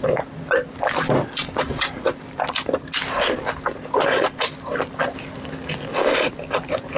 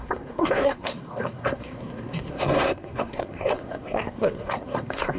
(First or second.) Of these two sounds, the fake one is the second